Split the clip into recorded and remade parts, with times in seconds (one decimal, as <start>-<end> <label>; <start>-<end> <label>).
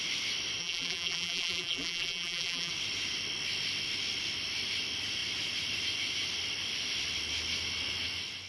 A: 0.0-0.6 recorded; 0.6-2.7 remade; 2.7-8.5 recorded